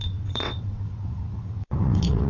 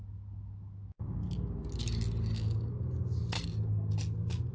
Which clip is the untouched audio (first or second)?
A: second